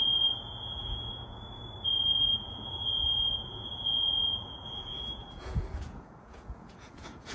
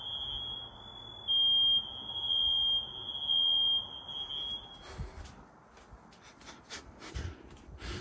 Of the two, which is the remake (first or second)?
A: first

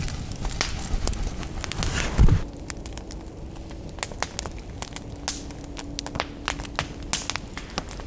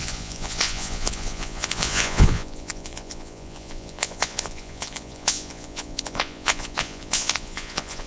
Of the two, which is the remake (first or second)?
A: second